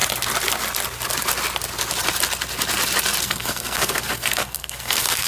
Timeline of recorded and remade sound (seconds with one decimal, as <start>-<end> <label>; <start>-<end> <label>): 0.0-3.2 recorded; 3.2-5.3 remade